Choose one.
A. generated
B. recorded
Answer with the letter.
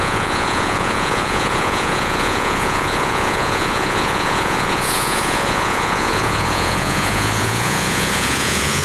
A